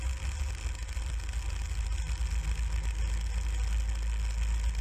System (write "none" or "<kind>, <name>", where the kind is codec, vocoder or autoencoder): none